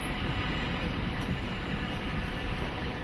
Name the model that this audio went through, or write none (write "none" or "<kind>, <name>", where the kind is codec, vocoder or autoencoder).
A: vocoder, BigVGAN v2